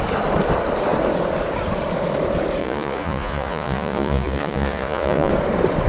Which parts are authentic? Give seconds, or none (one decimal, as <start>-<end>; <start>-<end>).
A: 0.0-2.6; 5.3-5.9